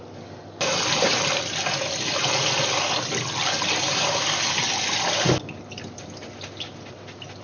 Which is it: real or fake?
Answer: real